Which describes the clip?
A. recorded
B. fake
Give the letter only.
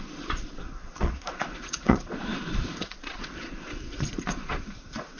B